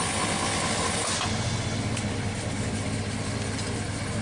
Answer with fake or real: real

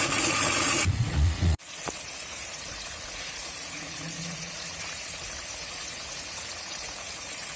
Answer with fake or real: fake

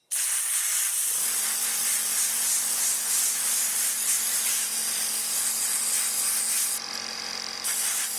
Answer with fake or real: real